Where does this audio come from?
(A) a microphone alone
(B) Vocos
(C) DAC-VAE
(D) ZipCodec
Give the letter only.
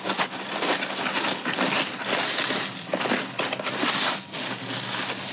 A